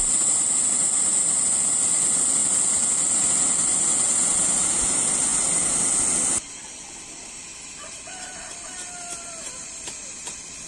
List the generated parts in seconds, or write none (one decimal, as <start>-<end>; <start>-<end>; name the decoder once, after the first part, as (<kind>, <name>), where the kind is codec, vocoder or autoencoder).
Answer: none

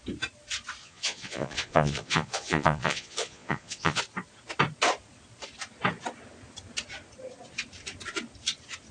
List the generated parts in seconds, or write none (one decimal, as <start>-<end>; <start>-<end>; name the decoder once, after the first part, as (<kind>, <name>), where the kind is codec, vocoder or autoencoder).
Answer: 0.8-4.0 (vocoder, Vocos)

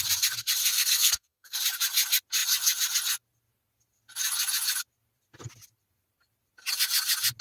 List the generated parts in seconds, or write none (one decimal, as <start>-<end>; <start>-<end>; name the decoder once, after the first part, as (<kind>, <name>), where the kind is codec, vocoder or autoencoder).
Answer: 0.6-1.6 (codec, SNAC)

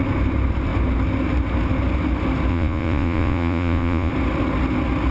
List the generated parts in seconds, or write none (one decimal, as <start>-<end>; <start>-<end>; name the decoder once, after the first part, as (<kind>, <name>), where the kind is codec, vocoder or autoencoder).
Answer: 2.5-4.1 (vocoder, Vocos)

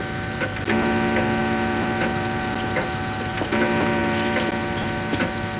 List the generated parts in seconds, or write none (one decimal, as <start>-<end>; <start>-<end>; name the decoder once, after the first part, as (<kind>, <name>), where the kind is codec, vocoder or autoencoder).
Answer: none